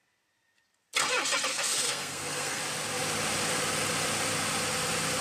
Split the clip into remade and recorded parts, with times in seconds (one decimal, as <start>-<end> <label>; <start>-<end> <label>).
0.0-1.5 recorded; 1.5-2.6 remade; 2.6-5.2 recorded